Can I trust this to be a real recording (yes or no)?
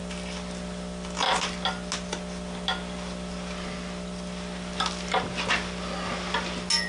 yes